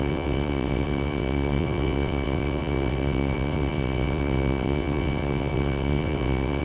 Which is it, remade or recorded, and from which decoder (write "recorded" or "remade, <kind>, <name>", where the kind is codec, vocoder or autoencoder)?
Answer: remade, vocoder, WaveNeXt